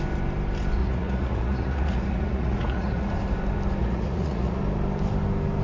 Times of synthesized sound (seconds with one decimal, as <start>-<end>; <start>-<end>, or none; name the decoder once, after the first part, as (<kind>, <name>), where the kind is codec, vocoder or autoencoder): 0.8-3.1 (vocoder, Vocos); 3.8-4.6